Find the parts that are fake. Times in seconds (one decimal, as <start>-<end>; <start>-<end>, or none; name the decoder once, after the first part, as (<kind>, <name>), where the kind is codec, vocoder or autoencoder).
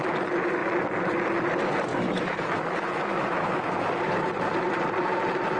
1.9-3.8 (autoencoder, DAC-VAE)